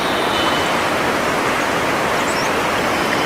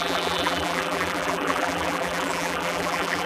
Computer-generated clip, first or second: second